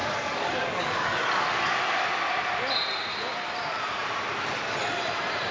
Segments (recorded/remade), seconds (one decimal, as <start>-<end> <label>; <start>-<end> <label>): 0.0-2.0 remade; 2.0-5.5 recorded